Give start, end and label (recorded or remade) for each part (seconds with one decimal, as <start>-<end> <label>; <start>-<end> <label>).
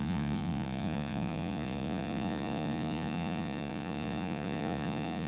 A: 0.0-5.3 remade